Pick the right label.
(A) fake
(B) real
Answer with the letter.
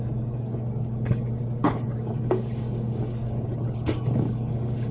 A